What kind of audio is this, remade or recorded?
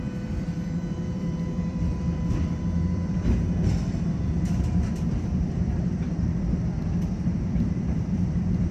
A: remade